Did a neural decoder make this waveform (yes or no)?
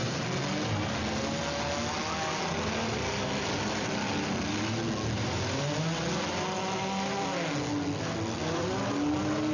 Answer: no